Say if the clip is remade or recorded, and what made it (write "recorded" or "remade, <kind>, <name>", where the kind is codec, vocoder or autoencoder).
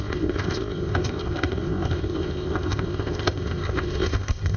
remade, codec, ZipCodec